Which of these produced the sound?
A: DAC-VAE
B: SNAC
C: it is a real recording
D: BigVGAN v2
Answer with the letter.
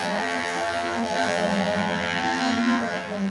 D